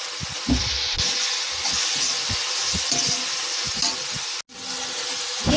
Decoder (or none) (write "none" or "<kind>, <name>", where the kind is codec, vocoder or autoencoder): none